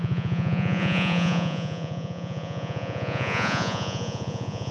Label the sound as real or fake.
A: fake